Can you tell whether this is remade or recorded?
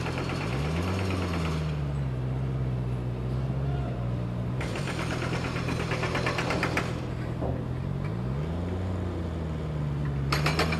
recorded